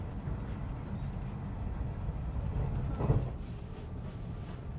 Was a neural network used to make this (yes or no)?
no